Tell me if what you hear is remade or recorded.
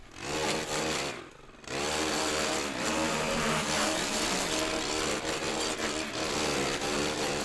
recorded